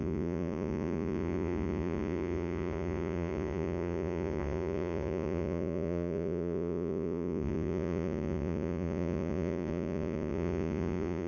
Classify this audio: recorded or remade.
remade